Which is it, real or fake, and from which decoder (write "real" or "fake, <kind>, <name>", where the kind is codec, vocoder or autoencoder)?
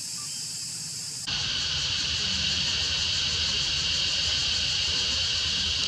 fake, vocoder, BigVGAN v2